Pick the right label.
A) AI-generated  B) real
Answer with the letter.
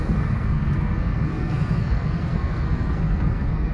A